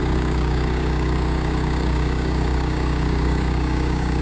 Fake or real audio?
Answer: fake